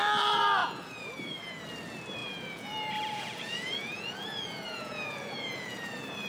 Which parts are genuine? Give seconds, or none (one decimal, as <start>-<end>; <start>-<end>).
0.0-0.6; 1.6-2.2